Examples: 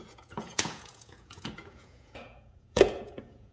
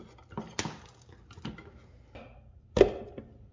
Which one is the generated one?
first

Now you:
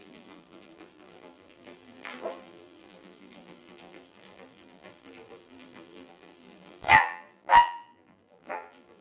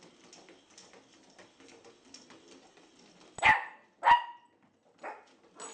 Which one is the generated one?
first